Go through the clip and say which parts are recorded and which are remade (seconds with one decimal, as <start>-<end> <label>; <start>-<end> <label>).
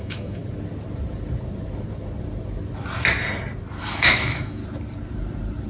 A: 0.0-0.4 remade; 0.4-3.8 recorded; 3.8-4.6 remade; 4.6-5.7 recorded